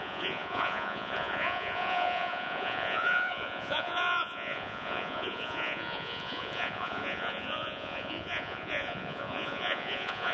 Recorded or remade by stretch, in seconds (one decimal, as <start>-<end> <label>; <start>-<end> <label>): 0.0-10.3 remade